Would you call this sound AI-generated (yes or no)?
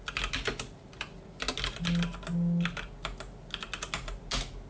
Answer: no